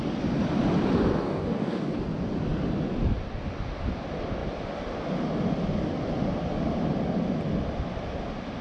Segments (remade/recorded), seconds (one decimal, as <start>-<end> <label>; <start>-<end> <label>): 0.0-1.2 recorded; 1.2-2.0 remade; 2.0-8.6 recorded